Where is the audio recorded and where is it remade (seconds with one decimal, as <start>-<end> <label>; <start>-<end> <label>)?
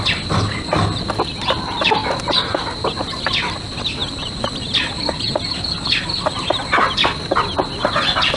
0.0-8.4 recorded